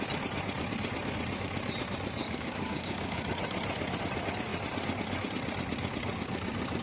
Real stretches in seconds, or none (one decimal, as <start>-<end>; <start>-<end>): 0.0-2.2; 3.2-6.8